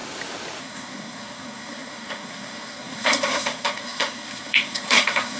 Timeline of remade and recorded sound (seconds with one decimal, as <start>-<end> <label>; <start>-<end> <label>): 0.0-0.6 recorded; 0.6-5.4 remade